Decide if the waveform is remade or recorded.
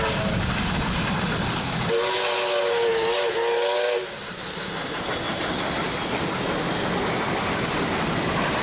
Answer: recorded